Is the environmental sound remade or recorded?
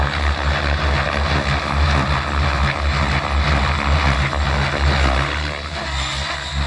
recorded